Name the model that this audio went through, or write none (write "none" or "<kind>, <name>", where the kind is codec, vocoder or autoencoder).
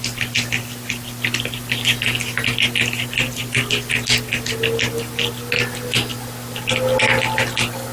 none